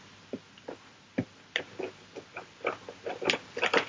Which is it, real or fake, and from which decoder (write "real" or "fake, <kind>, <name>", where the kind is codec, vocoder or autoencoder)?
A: real